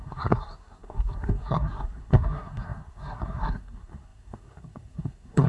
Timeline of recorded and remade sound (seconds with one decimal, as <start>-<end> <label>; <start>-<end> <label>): 0.0-5.5 remade